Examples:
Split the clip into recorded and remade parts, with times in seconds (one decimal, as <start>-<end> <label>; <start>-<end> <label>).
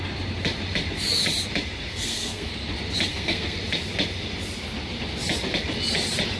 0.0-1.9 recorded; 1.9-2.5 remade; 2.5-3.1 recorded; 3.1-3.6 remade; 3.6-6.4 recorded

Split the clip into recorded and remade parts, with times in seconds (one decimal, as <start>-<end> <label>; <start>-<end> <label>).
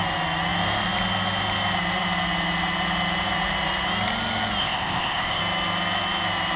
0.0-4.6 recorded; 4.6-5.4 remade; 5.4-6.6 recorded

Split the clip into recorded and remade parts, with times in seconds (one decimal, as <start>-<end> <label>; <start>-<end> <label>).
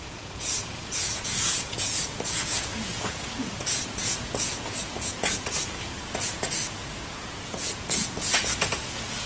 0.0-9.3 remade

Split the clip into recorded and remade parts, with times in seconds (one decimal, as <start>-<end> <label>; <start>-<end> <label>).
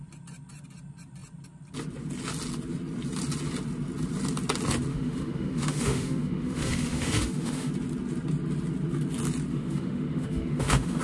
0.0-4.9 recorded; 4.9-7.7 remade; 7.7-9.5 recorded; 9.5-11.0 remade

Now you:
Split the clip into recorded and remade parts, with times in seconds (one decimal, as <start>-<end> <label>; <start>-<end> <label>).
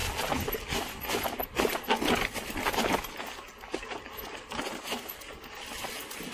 0.0-6.3 recorded